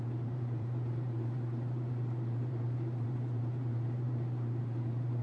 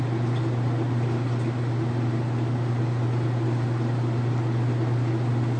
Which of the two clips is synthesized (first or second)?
first